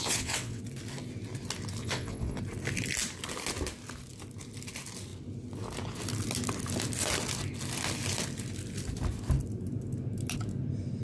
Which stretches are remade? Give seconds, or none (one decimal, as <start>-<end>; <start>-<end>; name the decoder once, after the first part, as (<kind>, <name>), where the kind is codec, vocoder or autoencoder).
0.0-0.6 (vocoder, WaveNeXt); 1.8-2.4